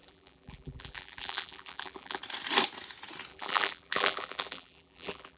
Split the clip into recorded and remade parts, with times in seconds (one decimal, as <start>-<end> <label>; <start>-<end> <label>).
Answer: 0.0-2.2 remade; 2.2-3.3 recorded; 3.3-5.4 remade